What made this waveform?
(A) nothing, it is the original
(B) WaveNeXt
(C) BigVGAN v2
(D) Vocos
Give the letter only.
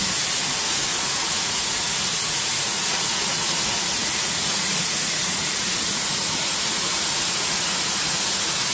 D